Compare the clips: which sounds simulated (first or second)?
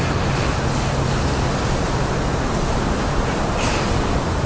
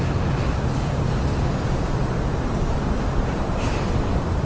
second